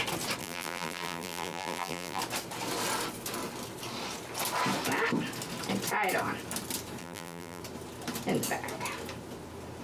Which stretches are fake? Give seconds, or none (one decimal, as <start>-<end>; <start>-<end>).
0.4-2.2; 7.0-7.6